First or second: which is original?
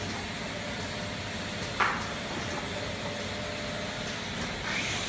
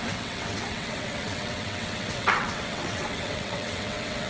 first